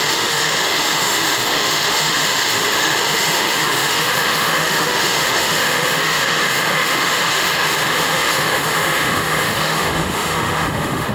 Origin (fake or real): fake